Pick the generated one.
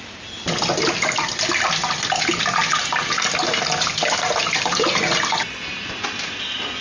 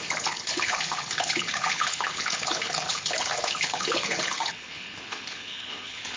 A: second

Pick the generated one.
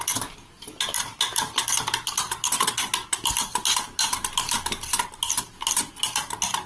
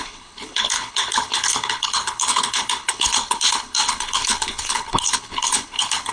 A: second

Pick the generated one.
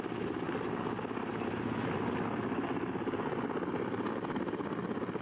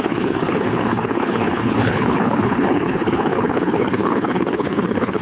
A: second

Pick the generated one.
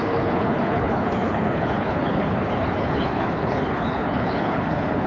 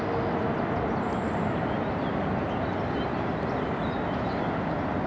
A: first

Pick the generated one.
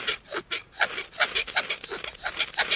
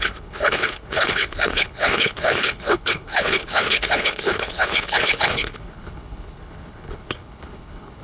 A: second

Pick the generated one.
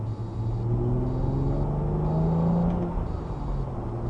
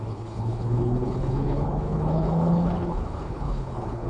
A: second